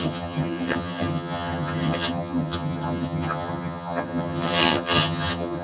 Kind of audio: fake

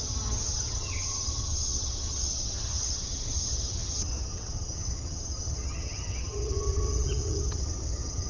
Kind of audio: fake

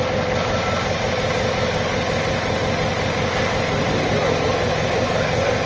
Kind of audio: real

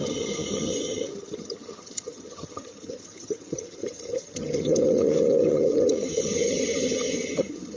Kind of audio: fake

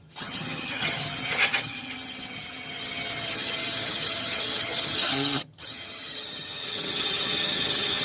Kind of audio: fake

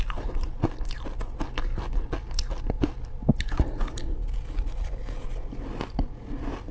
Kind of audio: real